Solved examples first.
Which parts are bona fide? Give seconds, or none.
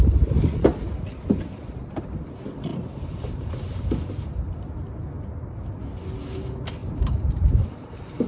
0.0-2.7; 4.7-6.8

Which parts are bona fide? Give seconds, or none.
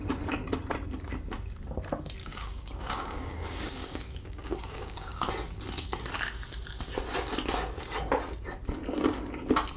0.0-2.2; 5.3-9.8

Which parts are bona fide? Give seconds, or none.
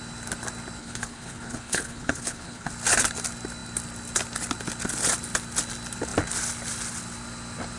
0.0-0.8; 2.7-7.8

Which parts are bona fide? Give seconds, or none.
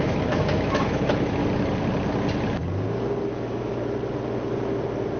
1.4-3.3; 3.7-5.2